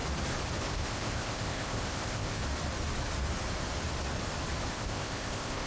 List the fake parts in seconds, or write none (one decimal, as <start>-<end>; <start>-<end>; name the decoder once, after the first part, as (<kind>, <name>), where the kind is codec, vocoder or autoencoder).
0.6-2.4 (codec, ZipCodec); 4.7-5.7